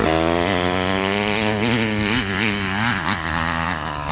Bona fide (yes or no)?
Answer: yes